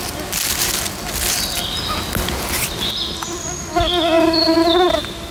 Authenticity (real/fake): real